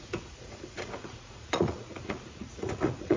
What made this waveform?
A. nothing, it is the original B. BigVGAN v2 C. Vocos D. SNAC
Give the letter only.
C